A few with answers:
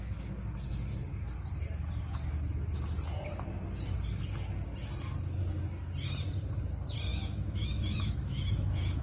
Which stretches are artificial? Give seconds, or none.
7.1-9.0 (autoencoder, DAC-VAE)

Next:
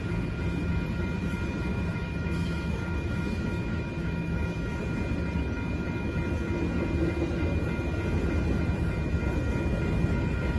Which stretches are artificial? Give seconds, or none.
1.7-4.8 (autoencoder, DAC-VAE)

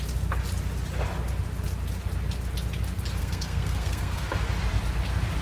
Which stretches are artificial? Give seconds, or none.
3.2-4.3 (codec, SNAC)